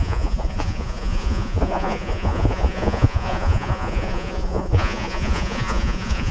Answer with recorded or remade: remade